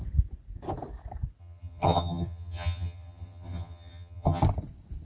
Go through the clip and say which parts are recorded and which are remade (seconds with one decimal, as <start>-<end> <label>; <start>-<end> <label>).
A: 0.0-1.4 recorded; 1.4-4.4 remade; 4.4-5.0 recorded